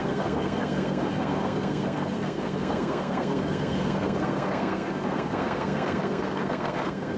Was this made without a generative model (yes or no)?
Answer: no